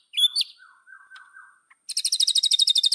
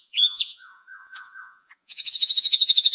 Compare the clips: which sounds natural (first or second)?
first